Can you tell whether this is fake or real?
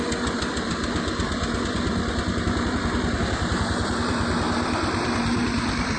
fake